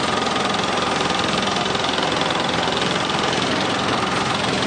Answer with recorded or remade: remade